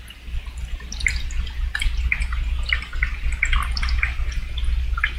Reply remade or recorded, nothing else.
recorded